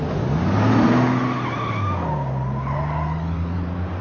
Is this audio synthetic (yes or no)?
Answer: no